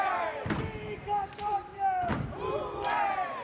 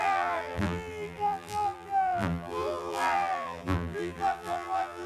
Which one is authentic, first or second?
first